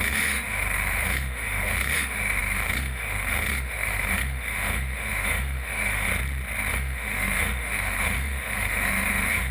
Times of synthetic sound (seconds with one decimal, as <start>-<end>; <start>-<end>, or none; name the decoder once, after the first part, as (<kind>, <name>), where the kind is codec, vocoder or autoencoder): 0.0-6.1 (autoencoder, DAC-VAE); 6.7-9.5